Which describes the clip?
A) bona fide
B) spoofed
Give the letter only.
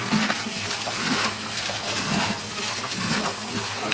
B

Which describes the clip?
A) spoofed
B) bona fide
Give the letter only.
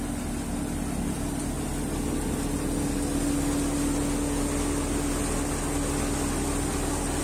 B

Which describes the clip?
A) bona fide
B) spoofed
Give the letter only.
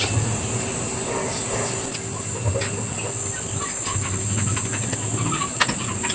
A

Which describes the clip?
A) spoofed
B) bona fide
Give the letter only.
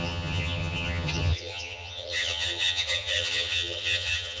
A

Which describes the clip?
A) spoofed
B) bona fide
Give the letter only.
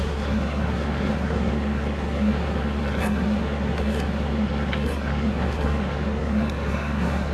A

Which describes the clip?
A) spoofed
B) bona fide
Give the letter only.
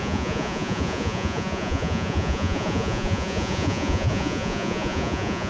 A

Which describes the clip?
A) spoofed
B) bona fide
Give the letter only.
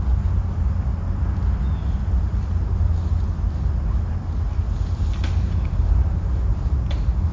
B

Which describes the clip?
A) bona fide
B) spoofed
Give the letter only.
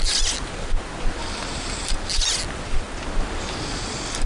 A